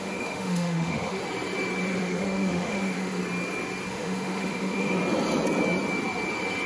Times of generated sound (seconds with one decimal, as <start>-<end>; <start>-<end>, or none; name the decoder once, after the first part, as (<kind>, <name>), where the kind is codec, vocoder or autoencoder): 0.0-1.2 (autoencoder, DAC-VAE); 2.0-3.2; 3.9-5.0